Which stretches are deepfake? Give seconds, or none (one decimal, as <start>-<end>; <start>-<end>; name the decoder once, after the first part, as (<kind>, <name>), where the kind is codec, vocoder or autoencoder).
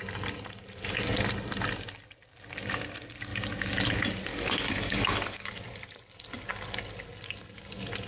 4.3-5.5 (codec, DAC)